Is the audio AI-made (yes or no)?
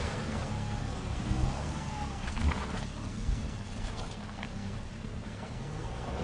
yes